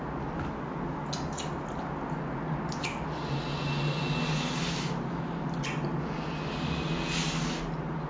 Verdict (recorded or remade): recorded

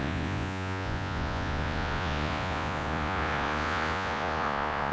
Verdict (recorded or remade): remade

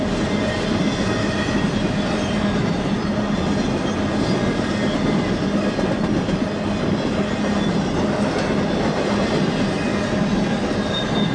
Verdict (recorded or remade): recorded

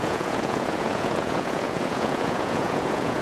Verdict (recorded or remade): remade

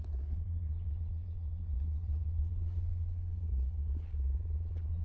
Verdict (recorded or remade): remade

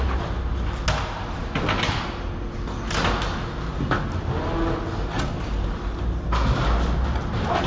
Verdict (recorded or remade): recorded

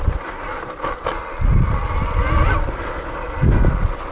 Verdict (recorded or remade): recorded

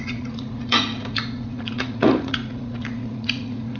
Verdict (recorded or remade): remade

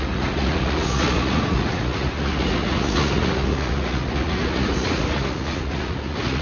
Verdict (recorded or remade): remade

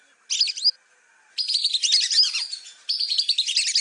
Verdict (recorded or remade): recorded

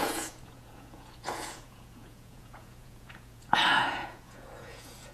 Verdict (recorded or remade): remade